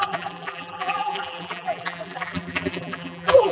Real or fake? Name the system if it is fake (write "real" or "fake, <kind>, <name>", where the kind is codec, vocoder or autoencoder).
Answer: fake, vocoder, BigVGAN v2